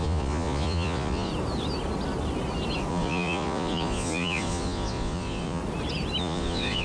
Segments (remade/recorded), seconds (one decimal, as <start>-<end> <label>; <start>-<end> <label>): 0.0-1.3 remade; 1.3-2.9 recorded; 2.9-5.6 remade; 5.6-6.2 recorded; 6.2-6.8 remade